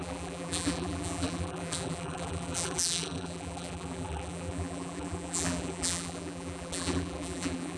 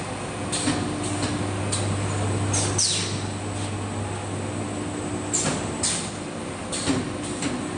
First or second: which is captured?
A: second